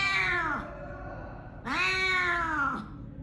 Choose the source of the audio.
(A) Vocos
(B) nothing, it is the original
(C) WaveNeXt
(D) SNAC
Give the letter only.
B